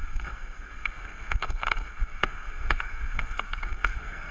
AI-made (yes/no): yes